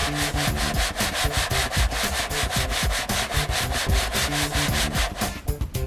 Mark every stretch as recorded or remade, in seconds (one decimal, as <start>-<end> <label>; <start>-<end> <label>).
0.0-5.9 recorded